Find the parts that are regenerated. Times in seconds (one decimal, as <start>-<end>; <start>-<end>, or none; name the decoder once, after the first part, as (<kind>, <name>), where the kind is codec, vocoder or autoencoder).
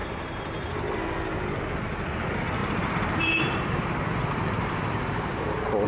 0.0-0.9 (vocoder, BigVGAN v2); 2.6-5.4